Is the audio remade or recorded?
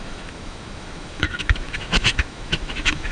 remade